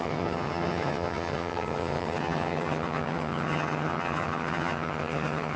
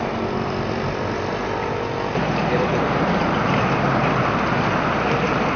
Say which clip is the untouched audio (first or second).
second